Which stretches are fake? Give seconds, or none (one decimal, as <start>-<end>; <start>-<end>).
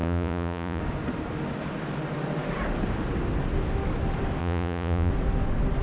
0.0-0.8; 4.4-5.1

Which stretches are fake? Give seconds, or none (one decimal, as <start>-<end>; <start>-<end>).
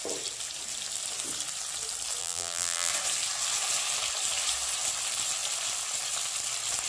2.2-2.9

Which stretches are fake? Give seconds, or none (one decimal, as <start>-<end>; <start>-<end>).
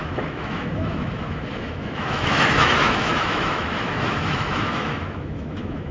0.0-5.9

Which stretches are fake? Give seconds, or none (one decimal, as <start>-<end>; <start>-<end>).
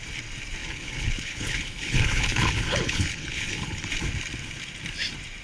0.6-3.8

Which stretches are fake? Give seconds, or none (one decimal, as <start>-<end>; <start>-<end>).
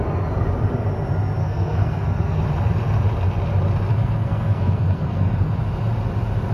1.4-2.4; 3.9-5.5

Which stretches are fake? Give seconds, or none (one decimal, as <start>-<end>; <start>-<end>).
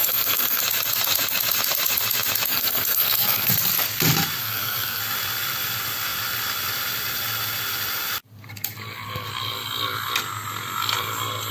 0.0-0.6; 2.5-3.5; 4.4-5.0